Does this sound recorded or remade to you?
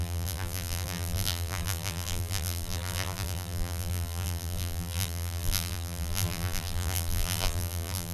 remade